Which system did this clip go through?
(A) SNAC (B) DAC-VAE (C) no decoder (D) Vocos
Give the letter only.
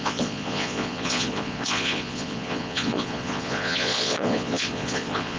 D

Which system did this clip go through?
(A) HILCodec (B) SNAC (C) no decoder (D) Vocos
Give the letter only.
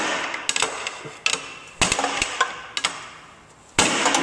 C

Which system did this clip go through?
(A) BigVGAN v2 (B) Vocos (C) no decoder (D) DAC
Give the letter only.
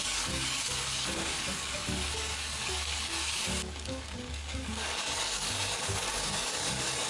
D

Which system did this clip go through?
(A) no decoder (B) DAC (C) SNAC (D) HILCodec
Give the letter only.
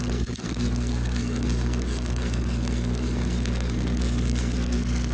C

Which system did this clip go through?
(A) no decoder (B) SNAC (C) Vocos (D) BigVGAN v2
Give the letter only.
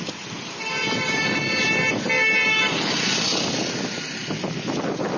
A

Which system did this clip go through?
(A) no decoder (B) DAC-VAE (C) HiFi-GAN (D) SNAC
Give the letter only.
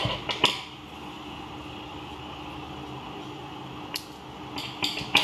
A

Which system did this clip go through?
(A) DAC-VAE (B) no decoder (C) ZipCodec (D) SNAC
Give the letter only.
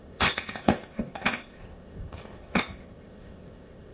C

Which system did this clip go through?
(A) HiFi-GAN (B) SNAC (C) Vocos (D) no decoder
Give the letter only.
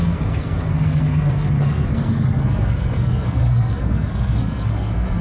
B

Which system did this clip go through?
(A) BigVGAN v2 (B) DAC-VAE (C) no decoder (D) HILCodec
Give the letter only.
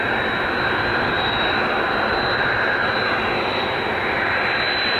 C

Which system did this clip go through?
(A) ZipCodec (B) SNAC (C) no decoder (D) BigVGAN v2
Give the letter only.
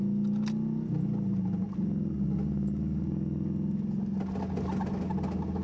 C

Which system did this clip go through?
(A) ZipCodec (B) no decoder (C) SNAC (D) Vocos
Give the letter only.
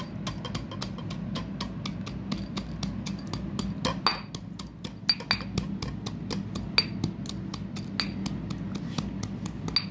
B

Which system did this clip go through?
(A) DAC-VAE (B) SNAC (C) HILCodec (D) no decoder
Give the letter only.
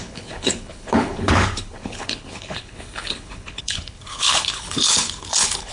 C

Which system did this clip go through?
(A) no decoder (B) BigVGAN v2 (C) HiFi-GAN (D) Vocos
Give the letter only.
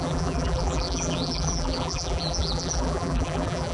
B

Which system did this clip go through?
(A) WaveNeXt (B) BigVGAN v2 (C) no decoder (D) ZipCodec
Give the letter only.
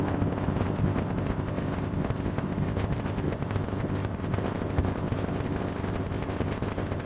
D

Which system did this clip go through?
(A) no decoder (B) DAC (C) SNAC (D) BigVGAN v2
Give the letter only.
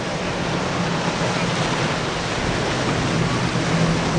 A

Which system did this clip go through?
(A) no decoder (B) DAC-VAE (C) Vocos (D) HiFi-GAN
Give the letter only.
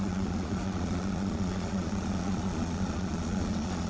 C